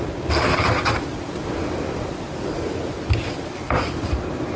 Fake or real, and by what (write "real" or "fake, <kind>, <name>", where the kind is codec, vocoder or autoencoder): real